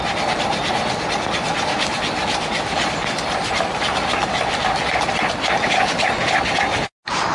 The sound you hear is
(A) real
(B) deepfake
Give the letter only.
A